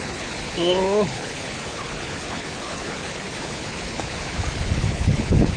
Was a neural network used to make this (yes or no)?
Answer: yes